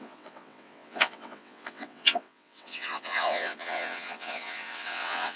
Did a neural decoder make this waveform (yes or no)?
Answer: yes